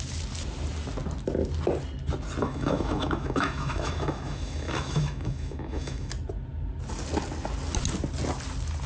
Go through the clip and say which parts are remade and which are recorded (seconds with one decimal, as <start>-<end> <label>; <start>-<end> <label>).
0.0-2.4 recorded; 2.4-6.1 remade; 6.1-8.9 recorded